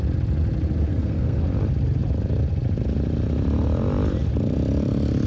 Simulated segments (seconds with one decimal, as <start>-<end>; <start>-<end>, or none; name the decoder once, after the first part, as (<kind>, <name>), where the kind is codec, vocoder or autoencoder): 0.9-1.4 (codec, SNAC)